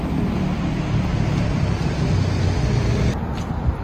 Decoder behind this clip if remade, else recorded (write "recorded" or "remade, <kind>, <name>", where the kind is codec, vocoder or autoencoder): recorded